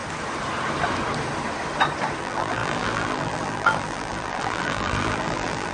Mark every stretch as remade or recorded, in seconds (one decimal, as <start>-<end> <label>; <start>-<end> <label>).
0.0-2.2 recorded; 2.2-5.7 remade